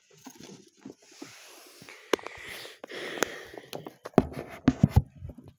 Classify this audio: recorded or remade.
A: recorded